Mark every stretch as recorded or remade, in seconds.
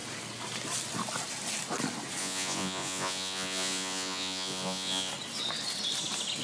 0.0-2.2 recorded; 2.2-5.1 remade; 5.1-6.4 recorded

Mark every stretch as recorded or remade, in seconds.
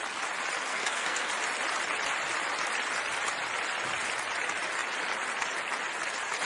0.0-0.7 recorded; 0.7-1.3 remade; 1.3-6.4 recorded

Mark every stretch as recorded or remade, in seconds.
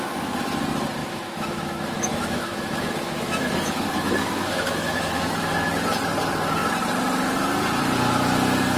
0.0-1.0 recorded; 1.0-5.5 remade; 5.5-8.8 recorded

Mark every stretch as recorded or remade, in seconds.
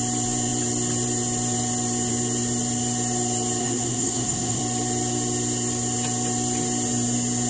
0.0-3.6 recorded; 3.6-4.6 remade; 4.6-7.5 recorded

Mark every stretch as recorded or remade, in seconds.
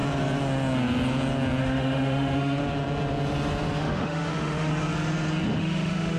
0.0-1.6 recorded; 1.6-2.6 remade; 2.6-3.8 recorded; 3.8-4.7 remade; 4.7-5.6 recorded; 5.6-6.2 remade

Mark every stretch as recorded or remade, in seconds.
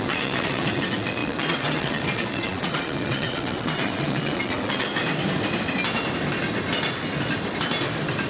0.0-4.9 remade; 4.9-8.3 recorded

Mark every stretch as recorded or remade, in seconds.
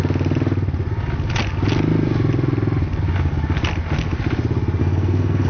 0.0-4.8 recorded; 4.8-5.5 remade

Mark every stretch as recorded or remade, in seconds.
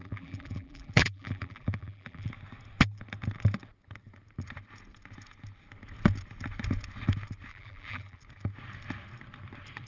0.0-2.3 remade; 2.3-7.5 recorded; 7.5-8.2 remade; 8.2-9.9 recorded